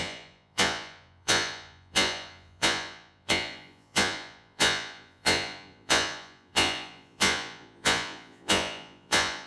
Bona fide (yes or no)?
no